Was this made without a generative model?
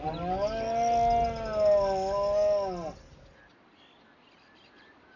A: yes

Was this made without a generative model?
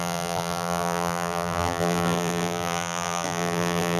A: no